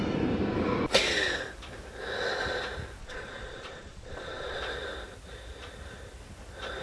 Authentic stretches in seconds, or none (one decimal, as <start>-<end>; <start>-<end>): 0.0-3.0; 4.6-6.8